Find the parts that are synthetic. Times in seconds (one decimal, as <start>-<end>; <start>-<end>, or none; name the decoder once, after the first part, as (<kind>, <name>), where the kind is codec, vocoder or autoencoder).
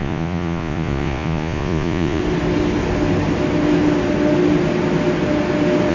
0.0-2.2 (vocoder, Vocos)